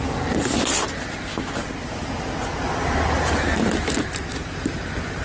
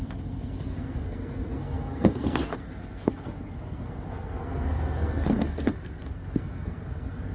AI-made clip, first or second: second